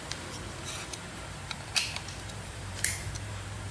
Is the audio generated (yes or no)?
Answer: yes